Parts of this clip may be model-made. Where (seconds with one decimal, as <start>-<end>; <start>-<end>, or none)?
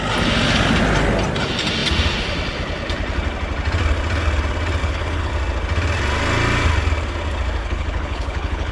4.8-5.3; 7.6-8.7